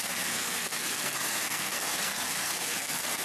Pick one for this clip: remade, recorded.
remade